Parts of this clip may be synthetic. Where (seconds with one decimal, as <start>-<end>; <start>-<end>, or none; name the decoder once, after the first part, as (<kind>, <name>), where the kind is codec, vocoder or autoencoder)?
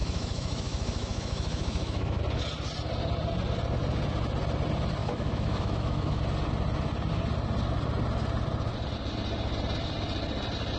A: 0.0-2.2 (autoencoder, DAC-VAE); 5.0-6.2